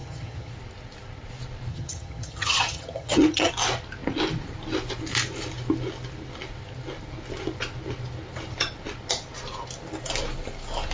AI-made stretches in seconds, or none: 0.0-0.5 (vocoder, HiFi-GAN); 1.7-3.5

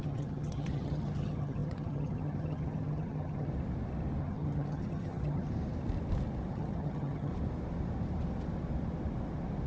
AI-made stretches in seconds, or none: 0.0-3.5 (vocoder, HiFi-GAN); 4.2-5.5; 6.5-7.3

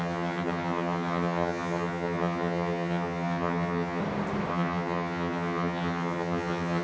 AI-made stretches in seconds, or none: 0.0-4.0 (vocoder, HiFi-GAN); 4.5-6.8

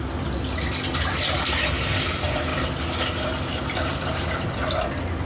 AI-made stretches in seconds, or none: none

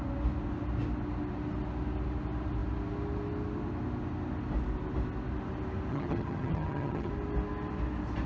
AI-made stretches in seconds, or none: 5.9-7.1 (vocoder, HiFi-GAN)

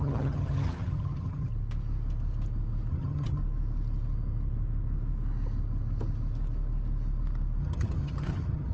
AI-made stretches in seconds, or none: 0.0-1.5 (vocoder, HiFi-GAN); 2.9-3.4; 7.6-8.7

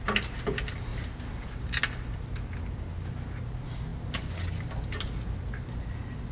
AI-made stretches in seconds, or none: none